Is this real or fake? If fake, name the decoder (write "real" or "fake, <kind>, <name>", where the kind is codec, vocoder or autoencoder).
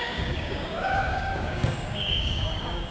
fake, codec, DAC